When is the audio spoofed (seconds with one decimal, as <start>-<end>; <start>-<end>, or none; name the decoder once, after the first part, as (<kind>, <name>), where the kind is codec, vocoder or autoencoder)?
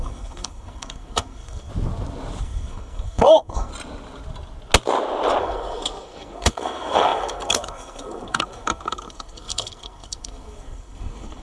0.0-1.7 (codec, SNAC); 2.4-3.7; 5.4-11.4